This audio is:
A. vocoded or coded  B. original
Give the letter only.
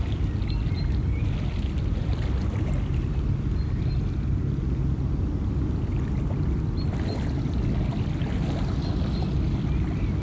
B